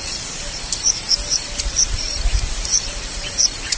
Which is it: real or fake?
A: fake